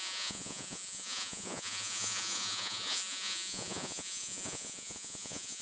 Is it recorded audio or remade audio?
remade